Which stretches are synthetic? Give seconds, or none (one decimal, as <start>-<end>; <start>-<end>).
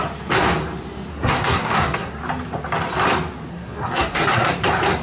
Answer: 1.1-2.2; 3.5-4.5